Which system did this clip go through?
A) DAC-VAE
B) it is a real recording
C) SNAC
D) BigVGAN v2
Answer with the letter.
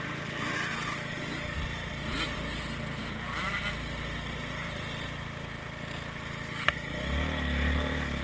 B